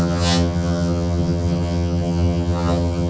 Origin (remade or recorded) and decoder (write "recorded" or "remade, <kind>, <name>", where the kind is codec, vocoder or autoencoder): remade, vocoder, HiFi-GAN